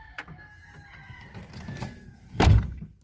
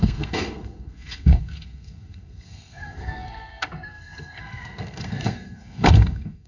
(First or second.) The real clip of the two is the first